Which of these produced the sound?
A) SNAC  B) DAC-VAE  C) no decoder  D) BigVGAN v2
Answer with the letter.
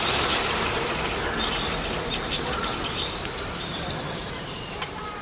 C